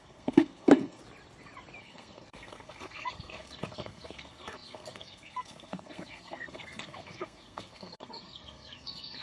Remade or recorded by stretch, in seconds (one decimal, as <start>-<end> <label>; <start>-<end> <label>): 0.0-1.0 remade; 1.0-1.8 recorded; 1.8-9.2 remade

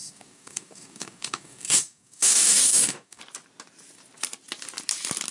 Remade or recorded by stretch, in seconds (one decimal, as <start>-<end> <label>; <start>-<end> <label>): 0.0-3.2 remade; 3.2-5.3 recorded

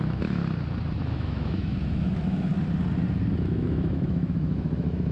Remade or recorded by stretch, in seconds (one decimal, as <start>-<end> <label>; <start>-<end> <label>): 0.0-0.4 remade; 0.4-1.0 recorded; 1.0-2.5 remade; 2.5-3.3 recorded; 3.3-5.1 remade